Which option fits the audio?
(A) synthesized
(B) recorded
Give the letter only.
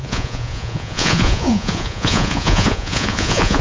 A